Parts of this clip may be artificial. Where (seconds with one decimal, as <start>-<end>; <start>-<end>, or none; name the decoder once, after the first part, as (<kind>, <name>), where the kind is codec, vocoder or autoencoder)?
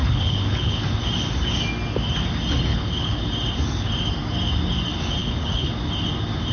0.0-0.8 (codec, HILCodec); 2.7-3.3; 5.2-5.7